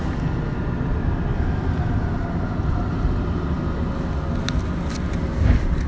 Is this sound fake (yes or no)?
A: no